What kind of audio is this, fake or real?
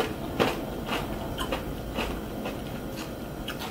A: real